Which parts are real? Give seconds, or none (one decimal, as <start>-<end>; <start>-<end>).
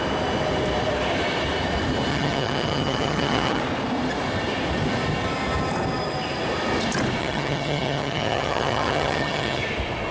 0.0-2.1; 3.6-7.2; 9.6-10.1